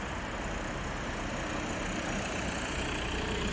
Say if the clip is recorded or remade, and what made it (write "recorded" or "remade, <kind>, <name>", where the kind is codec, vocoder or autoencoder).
recorded